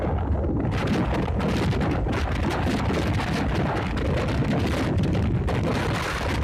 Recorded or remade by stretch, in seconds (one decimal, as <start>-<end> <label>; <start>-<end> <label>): 0.0-6.4 recorded